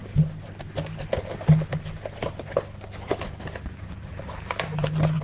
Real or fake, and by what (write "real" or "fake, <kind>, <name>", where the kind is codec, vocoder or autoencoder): real